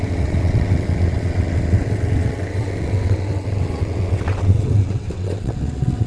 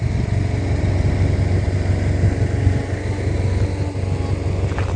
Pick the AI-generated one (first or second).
first